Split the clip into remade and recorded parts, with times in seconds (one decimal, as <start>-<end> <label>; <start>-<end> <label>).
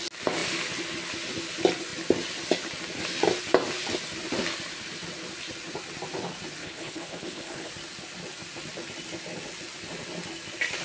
0.0-6.6 recorded; 6.6-7.7 remade; 7.7-10.8 recorded